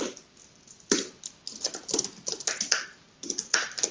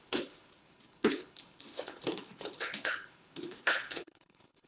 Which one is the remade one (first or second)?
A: second